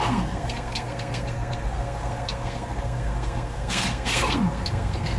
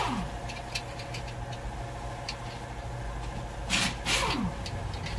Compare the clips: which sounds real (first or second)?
second